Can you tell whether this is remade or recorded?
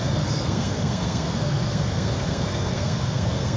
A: remade